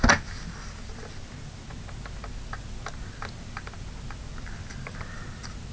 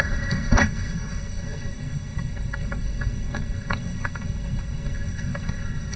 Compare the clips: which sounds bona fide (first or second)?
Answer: first